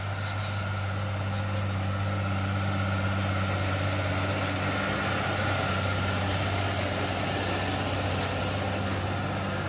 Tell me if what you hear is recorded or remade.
recorded